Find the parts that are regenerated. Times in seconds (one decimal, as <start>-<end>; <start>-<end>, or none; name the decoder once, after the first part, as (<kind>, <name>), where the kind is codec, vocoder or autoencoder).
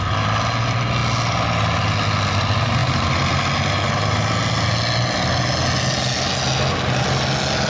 none